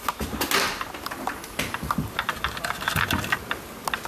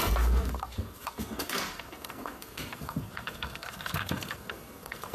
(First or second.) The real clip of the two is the first